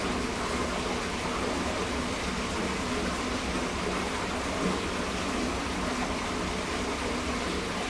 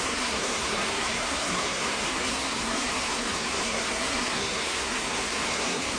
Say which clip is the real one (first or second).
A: first